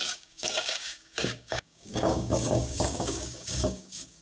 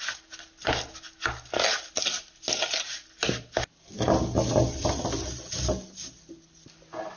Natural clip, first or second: second